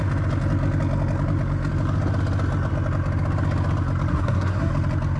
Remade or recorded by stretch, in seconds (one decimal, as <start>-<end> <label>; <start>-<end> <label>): 0.0-4.1 recorded; 4.1-4.7 remade; 4.7-5.2 recorded